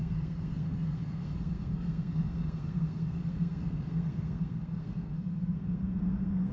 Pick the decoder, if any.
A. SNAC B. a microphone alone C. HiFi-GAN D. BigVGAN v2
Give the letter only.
A